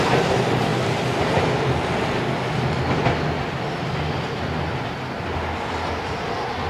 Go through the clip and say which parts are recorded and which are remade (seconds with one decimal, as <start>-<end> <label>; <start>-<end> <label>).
0.0-6.7 recorded